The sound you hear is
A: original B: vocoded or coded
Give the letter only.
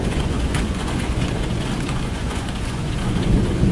B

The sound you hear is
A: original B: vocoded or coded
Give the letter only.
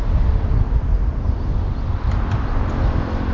A